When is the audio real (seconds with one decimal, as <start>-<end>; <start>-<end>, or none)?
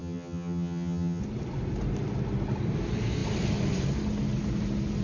1.2-5.0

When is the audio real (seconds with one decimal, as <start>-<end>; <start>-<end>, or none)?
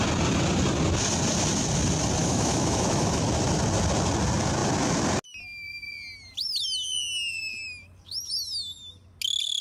0.0-2.2; 3.2-9.6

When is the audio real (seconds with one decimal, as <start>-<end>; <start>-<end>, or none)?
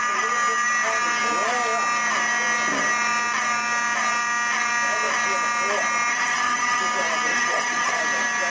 0.0-6.1; 6.8-7.3; 8.0-8.5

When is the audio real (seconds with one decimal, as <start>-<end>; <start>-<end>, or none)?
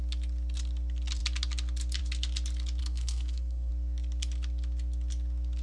0.0-2.8; 3.7-5.6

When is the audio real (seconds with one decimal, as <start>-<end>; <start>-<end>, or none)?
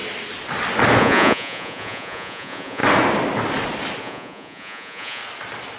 0.0-1.0; 2.8-4.0; 5.2-5.8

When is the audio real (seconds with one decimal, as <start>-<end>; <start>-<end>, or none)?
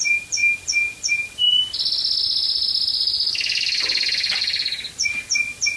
0.0-5.8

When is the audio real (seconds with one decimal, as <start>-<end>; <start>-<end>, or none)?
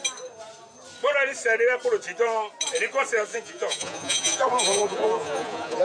0.0-3.3